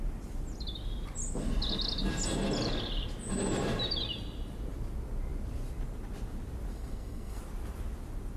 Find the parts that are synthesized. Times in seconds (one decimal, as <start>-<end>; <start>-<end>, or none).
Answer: 6.7-7.4